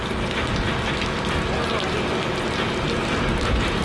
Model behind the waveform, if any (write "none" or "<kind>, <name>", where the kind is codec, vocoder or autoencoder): none